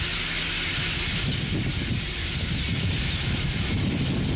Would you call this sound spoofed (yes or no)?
no